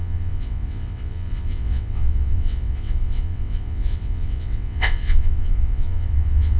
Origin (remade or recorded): remade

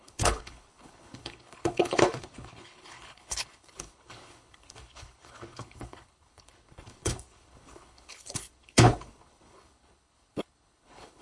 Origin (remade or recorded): remade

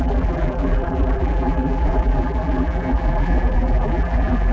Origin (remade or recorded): remade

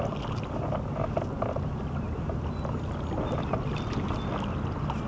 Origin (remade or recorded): recorded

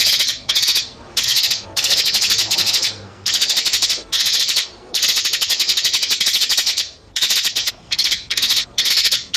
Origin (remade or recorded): remade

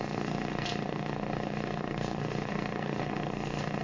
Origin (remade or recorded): remade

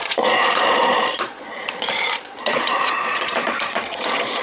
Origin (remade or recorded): remade